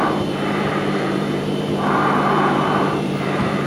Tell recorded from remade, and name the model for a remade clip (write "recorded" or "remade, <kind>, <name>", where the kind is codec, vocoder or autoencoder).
remade, vocoder, BigVGAN v2